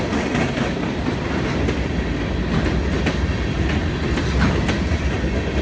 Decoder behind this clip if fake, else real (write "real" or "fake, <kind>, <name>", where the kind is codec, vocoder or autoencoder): real